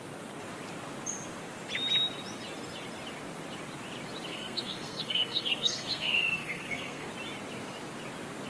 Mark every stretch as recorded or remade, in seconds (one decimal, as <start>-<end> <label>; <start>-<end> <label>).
0.0-4.3 recorded; 4.3-7.1 remade; 7.1-8.5 recorded